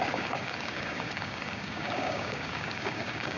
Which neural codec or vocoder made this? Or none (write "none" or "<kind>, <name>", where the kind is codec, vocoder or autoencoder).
codec, DAC